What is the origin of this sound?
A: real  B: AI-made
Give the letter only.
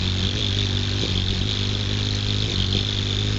A